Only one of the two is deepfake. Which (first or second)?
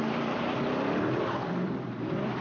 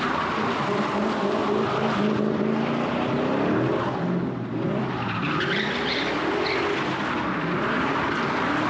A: first